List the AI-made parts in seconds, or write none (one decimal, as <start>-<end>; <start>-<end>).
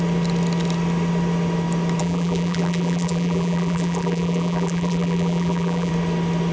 2.0-5.9